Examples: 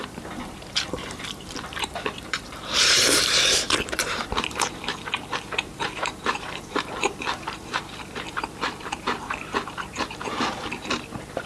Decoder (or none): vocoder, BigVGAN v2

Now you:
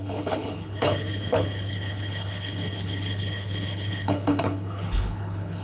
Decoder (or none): codec, HILCodec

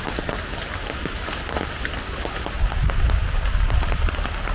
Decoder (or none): none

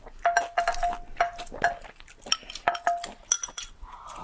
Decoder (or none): none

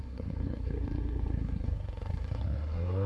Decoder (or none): codec, SNAC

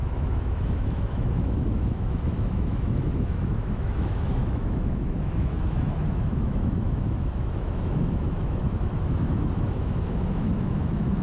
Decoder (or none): autoencoder, DAC-VAE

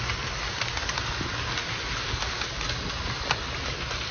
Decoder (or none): none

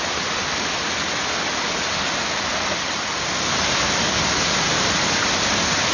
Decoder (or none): none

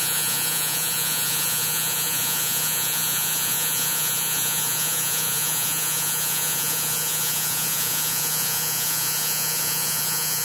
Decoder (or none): vocoder, Vocos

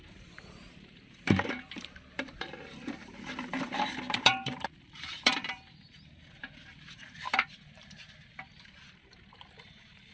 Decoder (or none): vocoder, BigVGAN v2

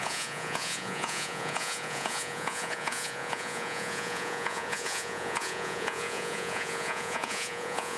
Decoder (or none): vocoder, Vocos